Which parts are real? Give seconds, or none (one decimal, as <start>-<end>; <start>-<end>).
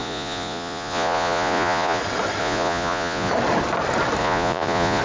2.0-2.4; 3.3-4.2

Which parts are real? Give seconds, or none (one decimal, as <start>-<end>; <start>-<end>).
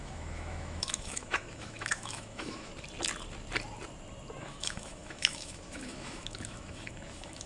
2.7-4.4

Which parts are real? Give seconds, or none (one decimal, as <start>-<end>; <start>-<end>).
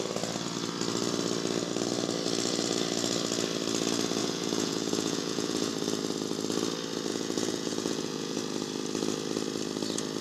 0.0-4.2; 5.7-7.1; 8.4-10.2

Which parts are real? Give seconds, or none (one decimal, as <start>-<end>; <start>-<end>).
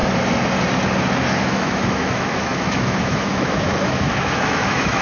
0.0-1.4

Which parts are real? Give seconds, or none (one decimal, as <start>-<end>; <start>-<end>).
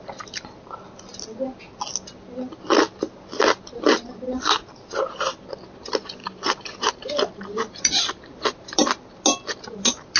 0.0-6.2; 8.2-10.2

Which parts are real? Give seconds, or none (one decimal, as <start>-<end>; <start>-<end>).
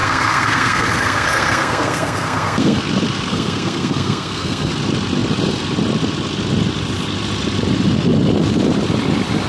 2.8-3.3; 4.7-9.5